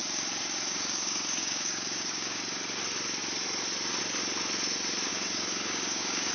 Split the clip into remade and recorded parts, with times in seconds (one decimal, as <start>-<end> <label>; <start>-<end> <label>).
0.0-2.4 remade; 2.4-5.1 recorded; 5.1-6.3 remade